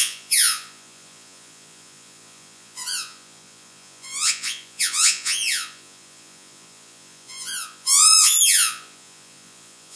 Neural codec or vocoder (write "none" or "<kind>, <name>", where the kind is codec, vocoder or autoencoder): vocoder, Vocos